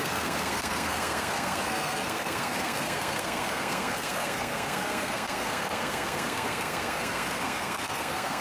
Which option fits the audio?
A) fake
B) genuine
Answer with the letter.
A